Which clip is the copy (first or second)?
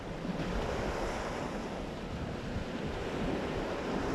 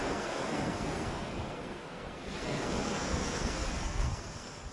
second